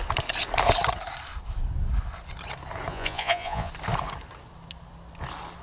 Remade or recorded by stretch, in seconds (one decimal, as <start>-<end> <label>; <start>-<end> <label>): 0.0-2.9 recorded; 2.9-3.7 remade; 3.7-5.6 recorded